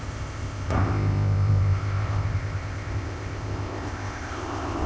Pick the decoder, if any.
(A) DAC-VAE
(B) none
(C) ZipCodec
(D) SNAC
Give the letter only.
C